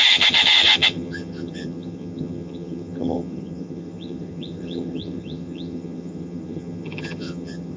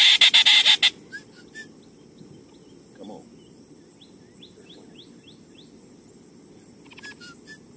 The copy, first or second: first